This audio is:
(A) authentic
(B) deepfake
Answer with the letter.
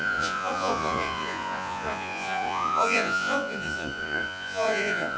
B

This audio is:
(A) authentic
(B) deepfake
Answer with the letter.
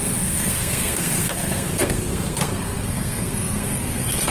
B